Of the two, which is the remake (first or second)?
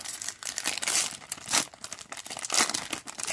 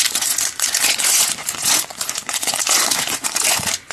second